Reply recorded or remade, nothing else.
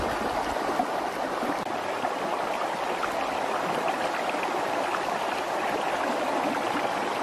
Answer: recorded